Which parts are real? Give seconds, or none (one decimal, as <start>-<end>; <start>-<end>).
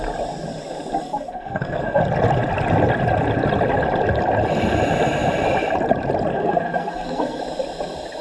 0.0-1.0; 2.0-6.3; 7.4-8.2